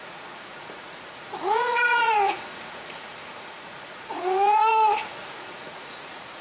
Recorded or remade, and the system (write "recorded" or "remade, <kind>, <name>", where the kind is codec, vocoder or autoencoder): remade, vocoder, Vocos